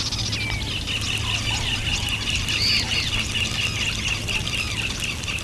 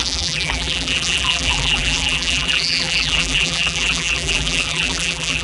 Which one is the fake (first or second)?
second